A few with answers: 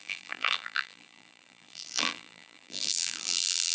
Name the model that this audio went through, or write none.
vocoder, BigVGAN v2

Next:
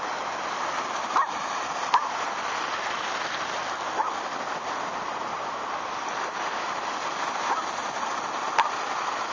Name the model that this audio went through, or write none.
none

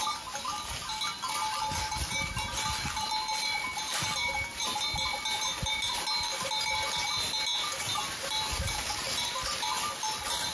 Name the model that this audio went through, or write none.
none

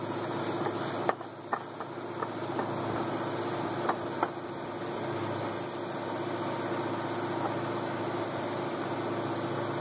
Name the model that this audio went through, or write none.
none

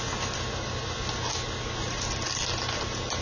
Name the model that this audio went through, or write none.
none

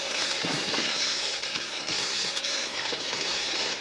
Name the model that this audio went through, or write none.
codec, SNAC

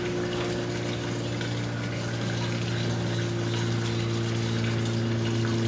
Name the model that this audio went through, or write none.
none